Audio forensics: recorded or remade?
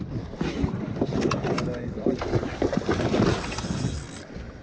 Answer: recorded